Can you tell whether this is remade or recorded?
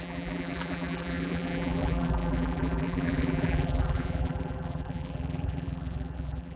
remade